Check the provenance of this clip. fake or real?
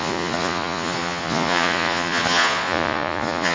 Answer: fake